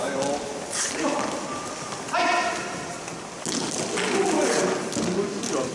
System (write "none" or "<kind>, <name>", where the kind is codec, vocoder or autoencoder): none